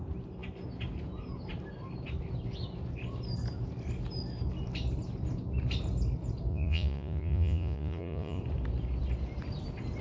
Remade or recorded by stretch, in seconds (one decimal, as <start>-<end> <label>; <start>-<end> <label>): 0.0-6.5 recorded; 6.5-8.4 remade; 8.4-10.0 recorded